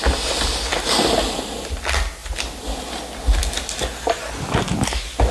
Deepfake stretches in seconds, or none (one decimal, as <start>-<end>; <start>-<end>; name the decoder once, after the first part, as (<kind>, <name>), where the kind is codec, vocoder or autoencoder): none